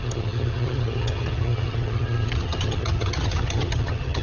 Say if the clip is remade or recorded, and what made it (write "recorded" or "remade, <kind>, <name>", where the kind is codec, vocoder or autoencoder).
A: remade, vocoder, HiFi-GAN